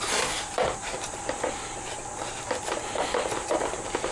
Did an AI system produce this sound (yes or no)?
yes